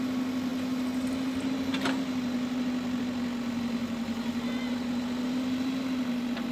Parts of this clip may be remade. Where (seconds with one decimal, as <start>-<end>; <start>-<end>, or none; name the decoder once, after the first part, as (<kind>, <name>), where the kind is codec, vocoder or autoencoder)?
none